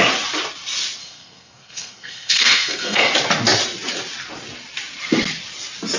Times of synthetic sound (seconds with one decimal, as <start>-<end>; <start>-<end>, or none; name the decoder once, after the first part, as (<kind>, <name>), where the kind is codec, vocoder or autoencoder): 1.0-3.0 (codec, SNAC)